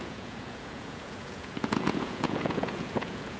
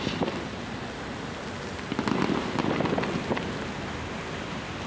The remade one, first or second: first